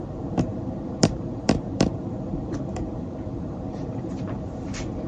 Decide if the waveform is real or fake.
fake